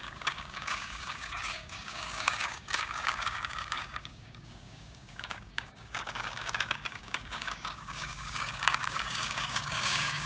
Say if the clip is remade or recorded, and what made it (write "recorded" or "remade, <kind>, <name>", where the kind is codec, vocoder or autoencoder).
remade, codec, DAC